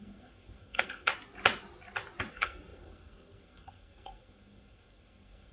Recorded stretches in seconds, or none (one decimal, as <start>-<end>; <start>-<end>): 1.1-2.3